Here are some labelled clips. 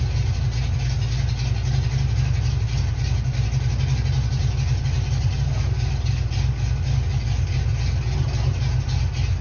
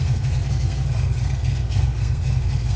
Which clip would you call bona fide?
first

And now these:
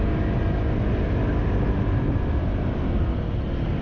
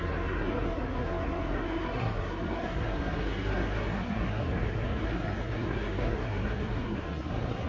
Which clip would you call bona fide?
first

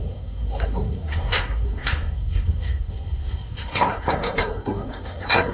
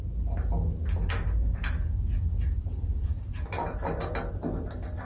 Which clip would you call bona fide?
second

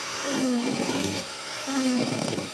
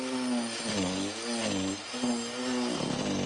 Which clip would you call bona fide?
second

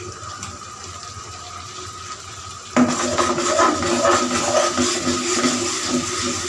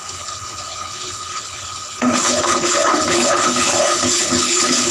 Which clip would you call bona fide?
first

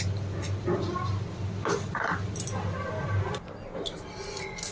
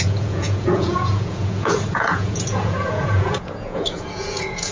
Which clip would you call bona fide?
first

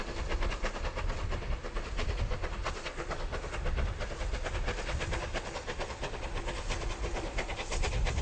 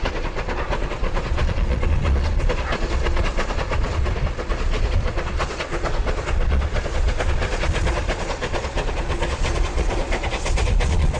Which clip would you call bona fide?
first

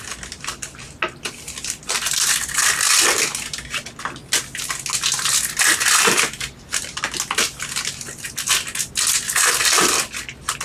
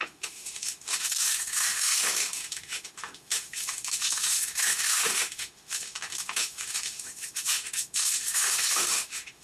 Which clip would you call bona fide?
first